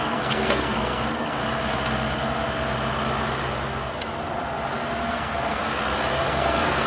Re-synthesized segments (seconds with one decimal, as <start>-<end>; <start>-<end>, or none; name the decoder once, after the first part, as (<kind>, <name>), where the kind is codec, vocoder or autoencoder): 0.0-1.4 (codec, SNAC); 5.1-5.6; 6.3-6.9